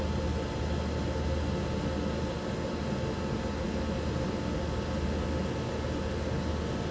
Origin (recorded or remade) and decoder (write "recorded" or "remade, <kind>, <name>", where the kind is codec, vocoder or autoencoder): recorded